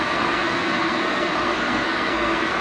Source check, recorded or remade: remade